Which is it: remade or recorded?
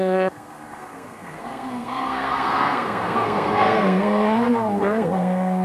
remade